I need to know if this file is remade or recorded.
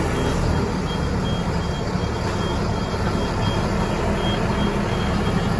recorded